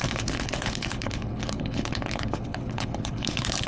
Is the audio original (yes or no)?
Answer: no